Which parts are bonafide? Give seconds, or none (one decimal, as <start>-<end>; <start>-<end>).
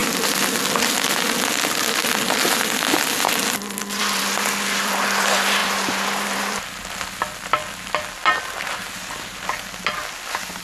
0.0-5.6; 6.6-10.6